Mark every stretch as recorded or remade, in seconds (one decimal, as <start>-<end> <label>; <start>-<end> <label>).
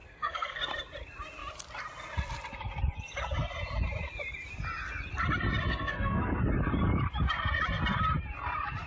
0.0-0.6 remade; 0.6-5.7 recorded; 5.7-6.4 remade; 6.4-8.9 recorded